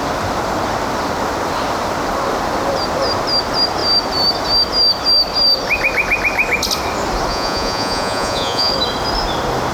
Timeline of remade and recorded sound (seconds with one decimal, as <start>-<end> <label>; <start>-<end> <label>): 0.0-7.3 recorded; 7.3-8.7 remade; 8.7-9.7 recorded